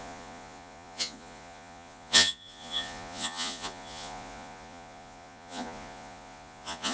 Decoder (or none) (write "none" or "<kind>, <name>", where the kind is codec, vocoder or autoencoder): vocoder, Vocos